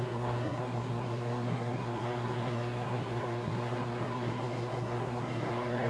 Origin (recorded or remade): remade